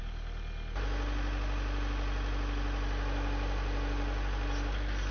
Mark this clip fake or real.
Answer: real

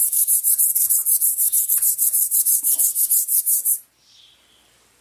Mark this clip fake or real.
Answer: real